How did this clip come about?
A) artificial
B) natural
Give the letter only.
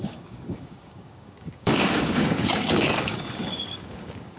A